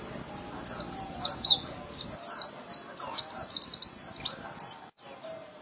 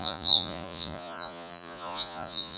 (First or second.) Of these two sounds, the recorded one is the first